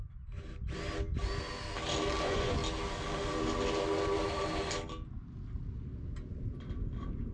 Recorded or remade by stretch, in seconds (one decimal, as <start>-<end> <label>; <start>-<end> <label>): 0.0-2.2 recorded; 2.2-2.6 remade; 2.6-7.3 recorded